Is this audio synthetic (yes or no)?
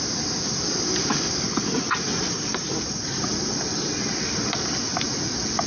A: no